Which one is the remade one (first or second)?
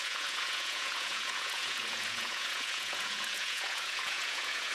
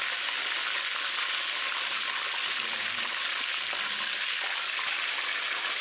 first